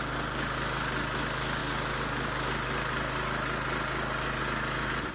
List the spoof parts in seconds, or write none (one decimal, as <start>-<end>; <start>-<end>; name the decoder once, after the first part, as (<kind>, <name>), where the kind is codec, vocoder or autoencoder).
none